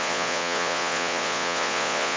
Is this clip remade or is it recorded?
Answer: remade